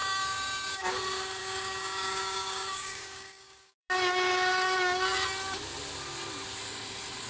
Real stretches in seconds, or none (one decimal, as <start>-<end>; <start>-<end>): 0.9-1.4; 3.9-7.3